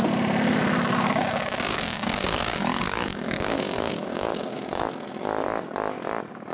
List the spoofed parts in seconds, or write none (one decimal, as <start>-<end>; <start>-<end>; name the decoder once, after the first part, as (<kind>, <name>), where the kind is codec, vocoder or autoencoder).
0.9-4.8 (codec, DAC)